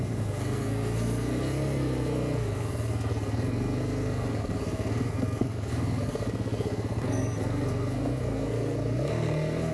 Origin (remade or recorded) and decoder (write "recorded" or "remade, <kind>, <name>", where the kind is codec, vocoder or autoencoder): remade, codec, SNAC